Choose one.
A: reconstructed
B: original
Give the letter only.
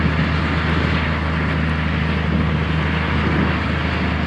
B